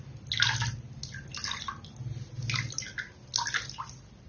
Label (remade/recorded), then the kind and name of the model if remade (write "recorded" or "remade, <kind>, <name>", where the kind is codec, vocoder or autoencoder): recorded